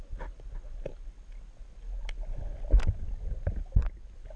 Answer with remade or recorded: recorded